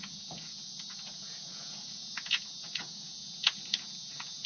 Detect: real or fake fake